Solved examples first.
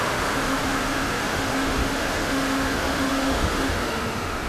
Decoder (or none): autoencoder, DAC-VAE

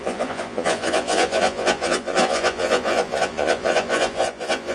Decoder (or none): vocoder, Vocos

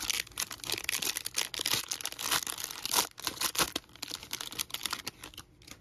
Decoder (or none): none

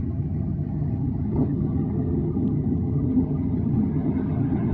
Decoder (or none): vocoder, HiFi-GAN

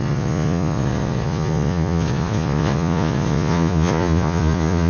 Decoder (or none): vocoder, Vocos